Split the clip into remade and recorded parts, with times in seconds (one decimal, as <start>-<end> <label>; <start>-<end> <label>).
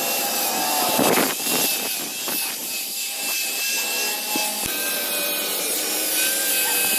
0.0-2.6 recorded; 2.6-3.7 remade; 3.7-7.0 recorded